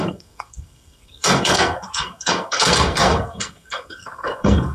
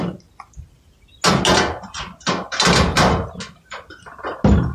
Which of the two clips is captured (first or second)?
second